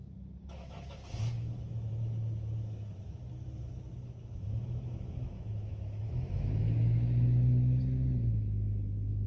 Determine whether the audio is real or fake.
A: fake